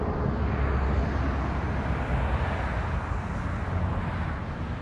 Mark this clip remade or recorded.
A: recorded